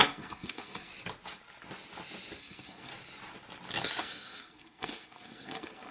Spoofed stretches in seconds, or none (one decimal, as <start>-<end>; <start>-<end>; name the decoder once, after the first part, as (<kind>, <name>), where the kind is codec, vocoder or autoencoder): 0.0-0.9 (codec, SNAC); 2.4-2.9; 4.0-5.9